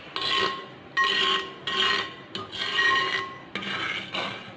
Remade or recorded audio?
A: recorded